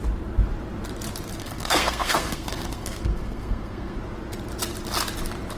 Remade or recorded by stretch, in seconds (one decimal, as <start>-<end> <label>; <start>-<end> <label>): 0.0-1.4 recorded; 1.4-4.0 remade; 4.0-5.6 recorded